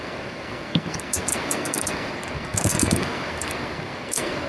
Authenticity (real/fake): fake